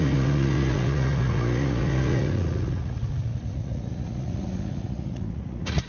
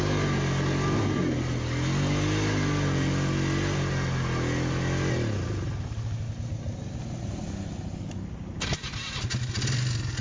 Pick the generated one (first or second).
first